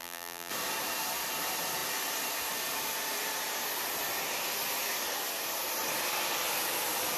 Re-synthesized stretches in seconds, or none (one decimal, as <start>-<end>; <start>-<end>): 0.0-0.5